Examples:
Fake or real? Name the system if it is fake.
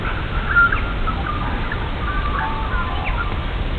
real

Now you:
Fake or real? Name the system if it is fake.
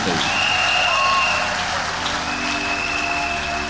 real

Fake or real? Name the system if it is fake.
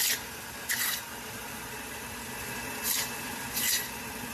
real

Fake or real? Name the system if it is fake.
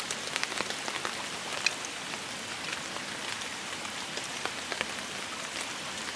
real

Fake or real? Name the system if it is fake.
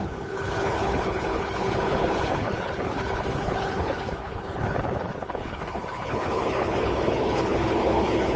fake, codec, HILCodec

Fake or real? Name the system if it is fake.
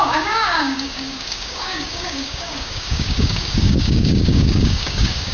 fake, codec, DAC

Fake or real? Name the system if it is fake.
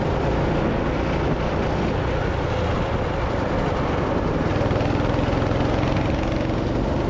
real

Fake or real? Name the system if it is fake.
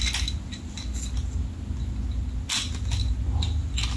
real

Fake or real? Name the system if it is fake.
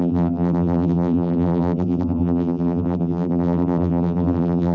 fake, vocoder, BigVGAN v2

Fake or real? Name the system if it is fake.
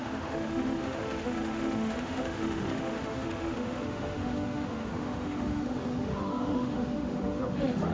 fake, autoencoder, DAC-VAE